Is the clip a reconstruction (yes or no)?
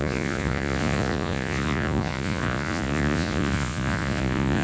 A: yes